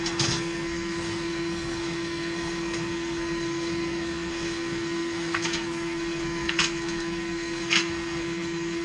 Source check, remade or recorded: remade